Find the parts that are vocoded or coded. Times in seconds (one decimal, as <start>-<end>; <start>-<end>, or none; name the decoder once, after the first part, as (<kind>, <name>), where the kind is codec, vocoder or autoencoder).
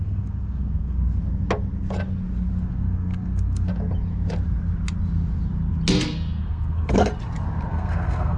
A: 0.0-1.2 (codec, SNAC); 2.6-3.7; 6.4-7.1; 7.7-8.4